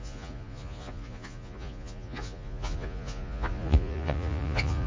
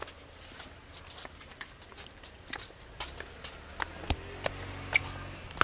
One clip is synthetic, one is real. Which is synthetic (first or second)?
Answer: first